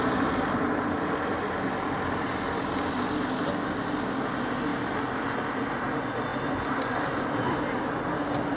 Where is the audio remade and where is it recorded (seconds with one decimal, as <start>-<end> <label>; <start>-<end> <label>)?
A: 0.0-8.6 recorded